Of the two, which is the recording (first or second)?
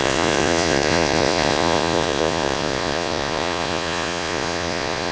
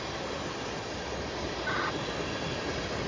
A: second